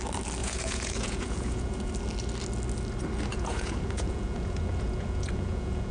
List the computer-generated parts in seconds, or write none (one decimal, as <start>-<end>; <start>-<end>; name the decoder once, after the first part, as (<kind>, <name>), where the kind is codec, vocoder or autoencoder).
0.4-1.9 (vocoder, Vocos); 3.3-5.9

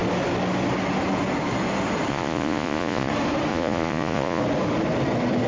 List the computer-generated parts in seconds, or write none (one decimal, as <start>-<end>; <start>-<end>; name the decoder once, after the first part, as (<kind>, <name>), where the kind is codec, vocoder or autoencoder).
2.1-3.1 (vocoder, Vocos); 3.5-4.4

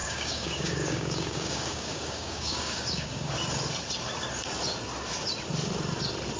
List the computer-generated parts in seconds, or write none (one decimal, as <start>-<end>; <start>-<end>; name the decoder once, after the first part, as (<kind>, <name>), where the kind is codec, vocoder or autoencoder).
0.0-3.3 (codec, DAC)